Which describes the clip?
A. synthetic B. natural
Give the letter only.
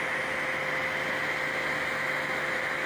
B